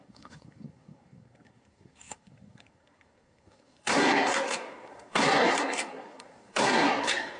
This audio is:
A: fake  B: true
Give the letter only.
A